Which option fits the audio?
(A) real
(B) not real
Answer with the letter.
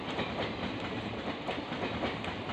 A